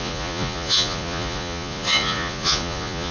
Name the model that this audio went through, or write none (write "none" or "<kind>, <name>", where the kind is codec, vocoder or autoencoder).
vocoder, Vocos